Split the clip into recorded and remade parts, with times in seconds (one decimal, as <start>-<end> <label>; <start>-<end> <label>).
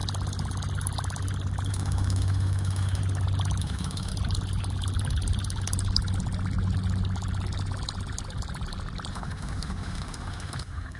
0.0-1.7 recorded; 1.7-3.0 remade; 3.0-3.6 recorded; 3.6-4.1 remade; 4.1-9.1 recorded; 9.1-11.0 remade